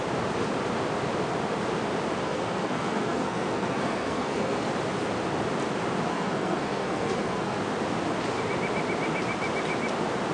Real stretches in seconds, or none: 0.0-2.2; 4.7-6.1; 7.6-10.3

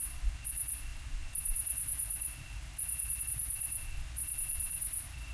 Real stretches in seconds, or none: 0.0-5.3

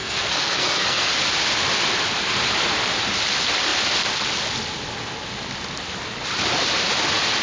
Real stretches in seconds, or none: 1.1-7.4